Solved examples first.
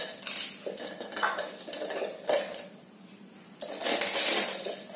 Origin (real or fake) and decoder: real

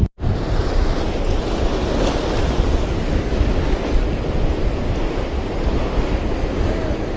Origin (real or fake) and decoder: real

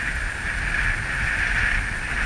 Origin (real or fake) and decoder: real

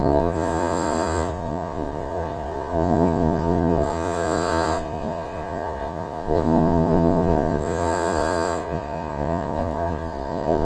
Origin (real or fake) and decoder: fake, vocoder, Vocos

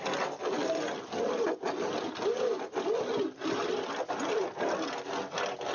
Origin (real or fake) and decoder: real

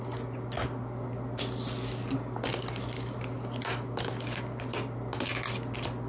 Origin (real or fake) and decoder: real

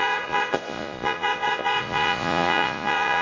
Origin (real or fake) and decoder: fake, vocoder, Vocos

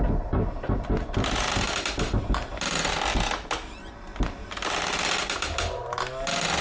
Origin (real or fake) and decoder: real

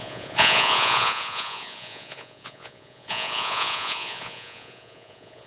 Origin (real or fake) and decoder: fake, vocoder, Vocos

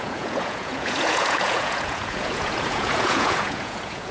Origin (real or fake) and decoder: fake, vocoder, Vocos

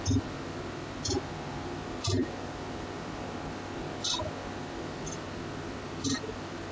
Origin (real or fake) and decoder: real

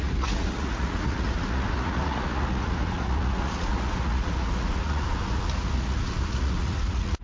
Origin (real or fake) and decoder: fake, vocoder, Vocos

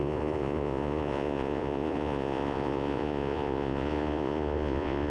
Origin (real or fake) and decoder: fake, vocoder, Vocos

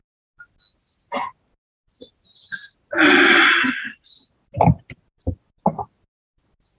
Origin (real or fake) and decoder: real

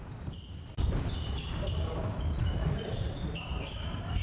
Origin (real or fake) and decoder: real